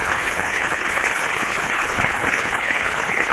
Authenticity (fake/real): fake